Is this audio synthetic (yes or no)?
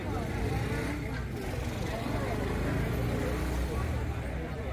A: no